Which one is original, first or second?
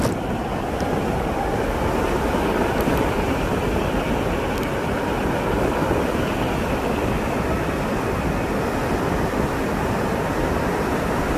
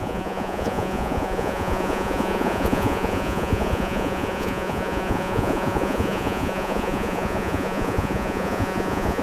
first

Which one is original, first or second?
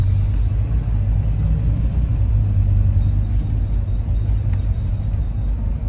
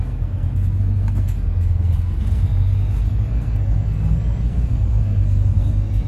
first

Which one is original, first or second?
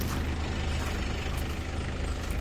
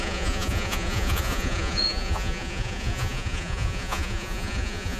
first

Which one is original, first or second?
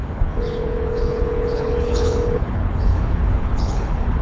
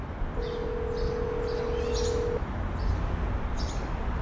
second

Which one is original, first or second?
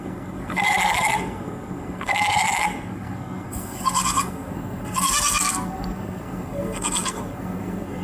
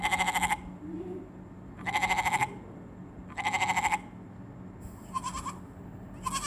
second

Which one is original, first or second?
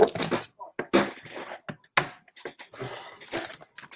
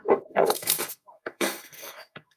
first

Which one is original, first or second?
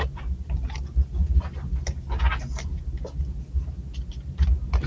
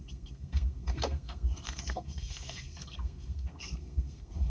first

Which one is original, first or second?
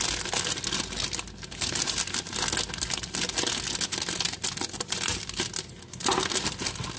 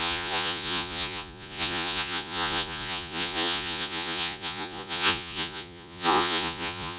first